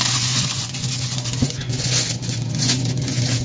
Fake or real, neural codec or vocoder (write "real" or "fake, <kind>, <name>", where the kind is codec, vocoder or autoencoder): fake, vocoder, Vocos